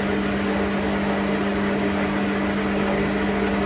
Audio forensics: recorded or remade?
recorded